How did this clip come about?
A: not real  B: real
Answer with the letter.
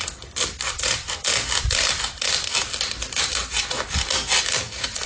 B